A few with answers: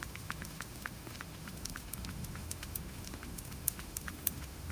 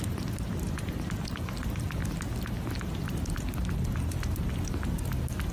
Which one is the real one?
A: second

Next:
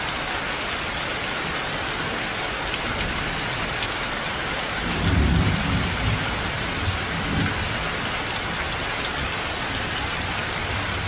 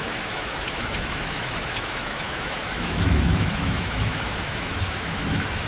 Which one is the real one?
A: first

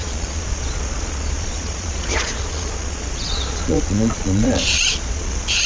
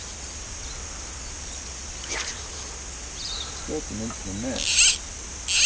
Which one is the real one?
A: second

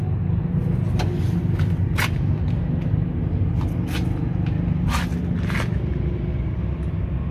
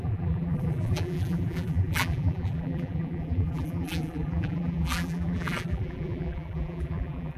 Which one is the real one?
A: first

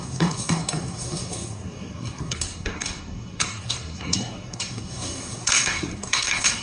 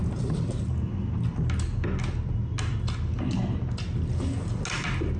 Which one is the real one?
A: second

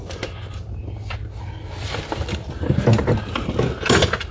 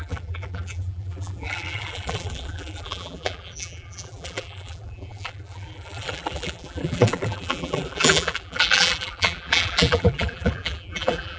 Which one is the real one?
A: first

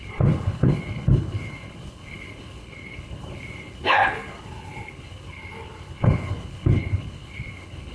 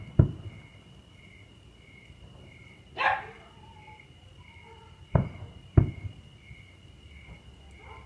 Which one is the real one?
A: second